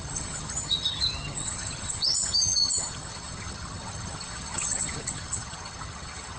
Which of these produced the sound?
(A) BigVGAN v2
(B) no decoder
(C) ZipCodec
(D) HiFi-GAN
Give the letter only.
D